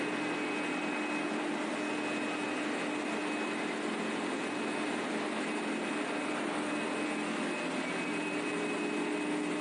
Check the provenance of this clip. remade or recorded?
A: recorded